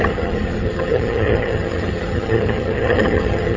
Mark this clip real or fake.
fake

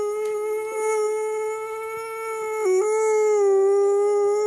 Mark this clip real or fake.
real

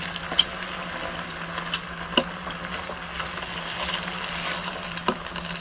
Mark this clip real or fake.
real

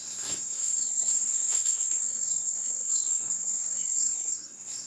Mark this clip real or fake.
fake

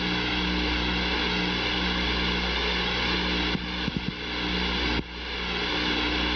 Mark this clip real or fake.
real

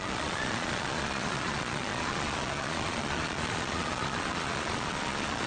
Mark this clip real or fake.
fake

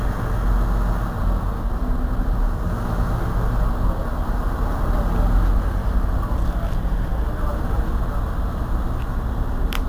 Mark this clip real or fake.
real